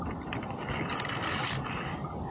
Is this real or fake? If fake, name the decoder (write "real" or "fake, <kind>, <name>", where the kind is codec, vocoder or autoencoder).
fake, vocoder, BigVGAN v2